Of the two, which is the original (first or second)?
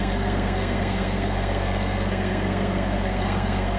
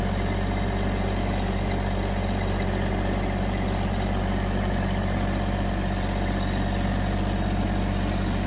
second